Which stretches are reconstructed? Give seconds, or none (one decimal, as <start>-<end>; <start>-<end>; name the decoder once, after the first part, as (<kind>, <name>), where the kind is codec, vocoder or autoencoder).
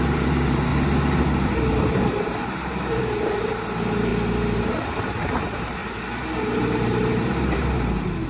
0.0-0.7 (vocoder, BigVGAN v2); 1.8-5.8; 6.4-8.3